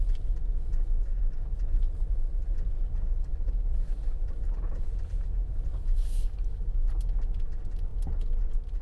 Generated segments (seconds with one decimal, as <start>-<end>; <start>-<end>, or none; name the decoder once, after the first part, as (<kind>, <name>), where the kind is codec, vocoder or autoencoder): 3.3-4.7 (vocoder, BigVGAN v2)

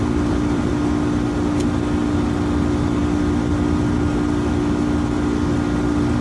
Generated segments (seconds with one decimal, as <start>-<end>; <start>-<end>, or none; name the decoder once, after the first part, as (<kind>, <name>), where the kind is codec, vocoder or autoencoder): 0.0-0.7 (vocoder, BigVGAN v2)

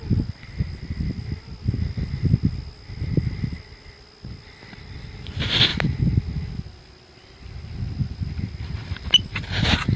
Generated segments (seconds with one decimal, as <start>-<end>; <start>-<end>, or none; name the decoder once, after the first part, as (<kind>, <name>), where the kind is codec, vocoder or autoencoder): none

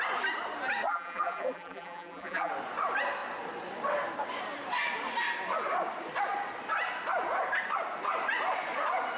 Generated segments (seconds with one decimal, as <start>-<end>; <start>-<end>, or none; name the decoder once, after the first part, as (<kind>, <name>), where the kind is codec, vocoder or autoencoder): 0.9-2.5 (vocoder, BigVGAN v2)

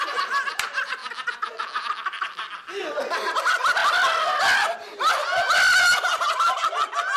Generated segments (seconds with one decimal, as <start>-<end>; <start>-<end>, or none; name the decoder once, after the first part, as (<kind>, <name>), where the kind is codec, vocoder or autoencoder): 0.0-1.0 (vocoder, BigVGAN v2); 1.8-3.8; 4.4-7.2

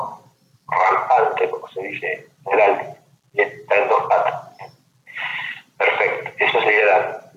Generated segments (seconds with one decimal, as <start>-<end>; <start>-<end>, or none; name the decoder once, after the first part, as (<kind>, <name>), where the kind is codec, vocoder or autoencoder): 5.3-7.4 (vocoder, BigVGAN v2)